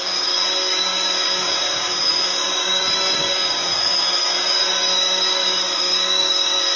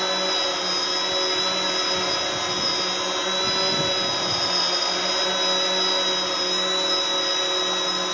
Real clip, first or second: second